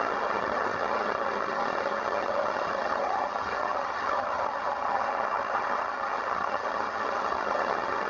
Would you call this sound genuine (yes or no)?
no